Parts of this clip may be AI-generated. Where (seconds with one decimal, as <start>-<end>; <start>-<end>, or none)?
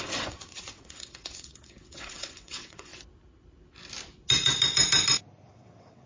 0.0-2.9; 5.5-6.1